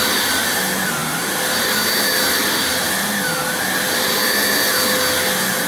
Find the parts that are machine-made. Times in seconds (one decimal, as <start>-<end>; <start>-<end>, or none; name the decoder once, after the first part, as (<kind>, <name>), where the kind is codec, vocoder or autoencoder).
none